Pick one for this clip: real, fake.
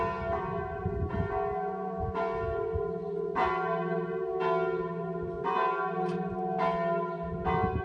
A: real